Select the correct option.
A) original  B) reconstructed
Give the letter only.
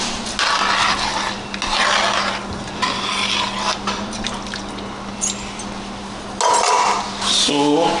A